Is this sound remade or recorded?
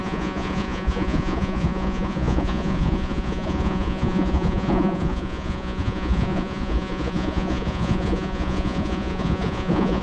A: remade